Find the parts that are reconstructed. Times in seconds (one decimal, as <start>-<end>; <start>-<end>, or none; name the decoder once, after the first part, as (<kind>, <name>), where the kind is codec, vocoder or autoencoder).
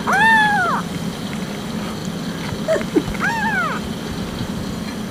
none